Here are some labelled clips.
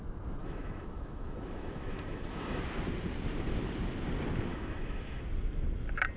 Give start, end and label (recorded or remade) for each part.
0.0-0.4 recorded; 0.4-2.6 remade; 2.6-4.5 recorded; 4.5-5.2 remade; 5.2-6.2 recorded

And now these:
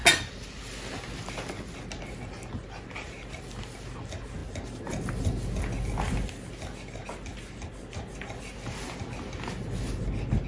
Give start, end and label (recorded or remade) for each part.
0.0-10.5 recorded

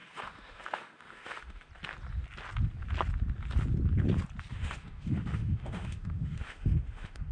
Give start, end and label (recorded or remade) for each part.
0.0-1.7 remade; 1.7-4.5 recorded; 4.5-7.3 remade